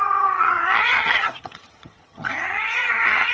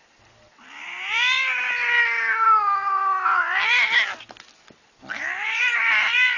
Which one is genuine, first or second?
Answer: second